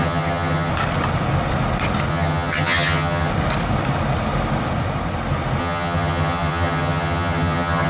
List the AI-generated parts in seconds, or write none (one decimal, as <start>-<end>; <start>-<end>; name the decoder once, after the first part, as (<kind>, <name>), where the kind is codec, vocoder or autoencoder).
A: 0.0-0.7 (vocoder, HiFi-GAN); 2.1-3.3; 5.6-7.9